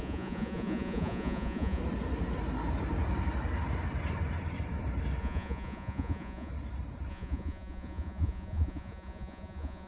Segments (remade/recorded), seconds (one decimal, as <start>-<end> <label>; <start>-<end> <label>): 0.0-1.8 remade; 1.8-5.2 recorded; 5.2-6.5 remade; 6.5-7.1 recorded; 7.1-9.9 remade